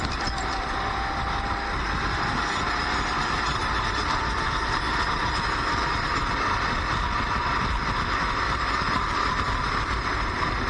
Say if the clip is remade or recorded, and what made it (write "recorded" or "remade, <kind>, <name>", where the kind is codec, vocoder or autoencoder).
recorded